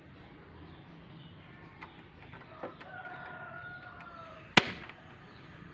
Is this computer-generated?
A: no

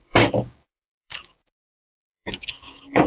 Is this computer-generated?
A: yes